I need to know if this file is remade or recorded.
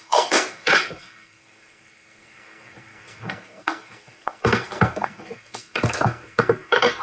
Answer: remade